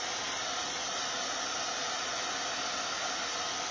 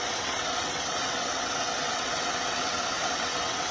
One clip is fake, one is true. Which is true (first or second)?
first